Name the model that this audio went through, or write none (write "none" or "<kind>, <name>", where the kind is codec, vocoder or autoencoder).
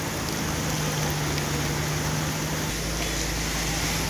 none